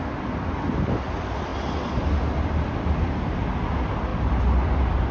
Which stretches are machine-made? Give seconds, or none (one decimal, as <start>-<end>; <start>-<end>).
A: none